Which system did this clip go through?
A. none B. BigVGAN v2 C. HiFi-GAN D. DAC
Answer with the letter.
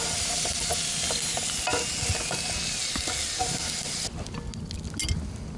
A